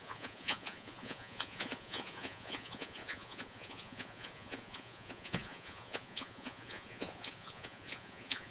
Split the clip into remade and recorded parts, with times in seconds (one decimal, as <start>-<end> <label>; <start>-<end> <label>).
0.0-8.5 remade